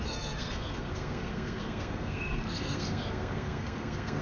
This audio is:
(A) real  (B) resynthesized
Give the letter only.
B